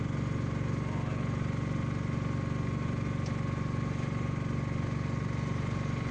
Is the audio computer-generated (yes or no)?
no